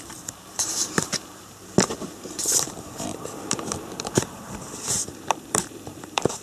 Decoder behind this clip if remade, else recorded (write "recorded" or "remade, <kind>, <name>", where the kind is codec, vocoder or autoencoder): remade, vocoder, BigVGAN v2